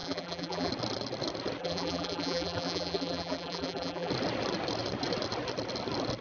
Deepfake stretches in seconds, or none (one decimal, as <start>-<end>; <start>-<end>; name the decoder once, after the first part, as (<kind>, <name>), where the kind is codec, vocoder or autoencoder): 0.0-0.7 (vocoder, BigVGAN v2); 1.6-4.1